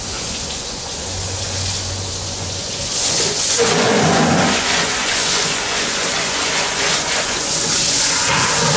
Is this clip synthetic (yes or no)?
yes